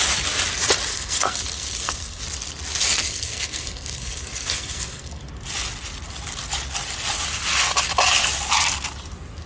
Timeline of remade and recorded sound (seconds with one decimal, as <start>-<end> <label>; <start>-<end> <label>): 0.0-0.9 recorded; 0.9-2.2 remade; 2.2-3.0 recorded; 3.0-5.2 remade; 5.2-9.5 recorded